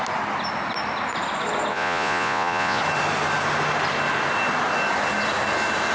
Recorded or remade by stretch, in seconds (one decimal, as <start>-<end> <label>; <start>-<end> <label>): 0.0-1.7 recorded; 1.7-2.8 remade; 2.8-5.9 recorded